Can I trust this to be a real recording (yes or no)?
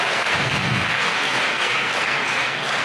no